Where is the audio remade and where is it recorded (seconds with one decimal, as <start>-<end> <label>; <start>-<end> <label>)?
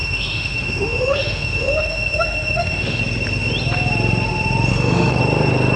0.0-3.0 remade; 3.0-4.7 recorded; 4.7-5.2 remade; 5.2-5.8 recorded